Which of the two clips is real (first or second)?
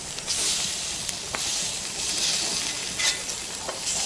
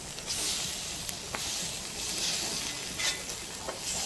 second